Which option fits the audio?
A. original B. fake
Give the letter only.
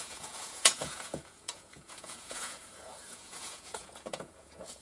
B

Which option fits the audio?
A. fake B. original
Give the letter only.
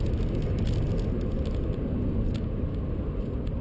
B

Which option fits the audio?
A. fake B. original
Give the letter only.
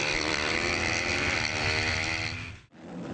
B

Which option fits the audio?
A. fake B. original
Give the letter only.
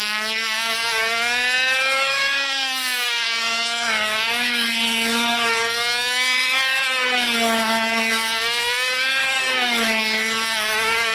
A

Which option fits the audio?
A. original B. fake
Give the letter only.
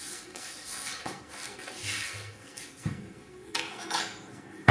B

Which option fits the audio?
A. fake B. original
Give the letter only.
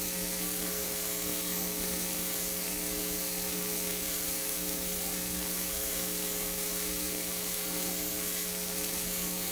A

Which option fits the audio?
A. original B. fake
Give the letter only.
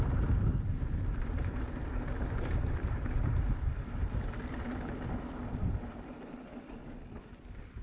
B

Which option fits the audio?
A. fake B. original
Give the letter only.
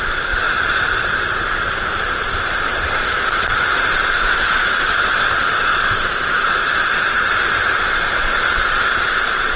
A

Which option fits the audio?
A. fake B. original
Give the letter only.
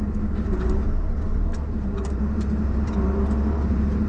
A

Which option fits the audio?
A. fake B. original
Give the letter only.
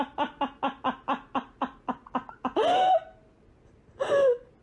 B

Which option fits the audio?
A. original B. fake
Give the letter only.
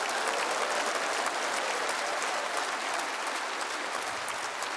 A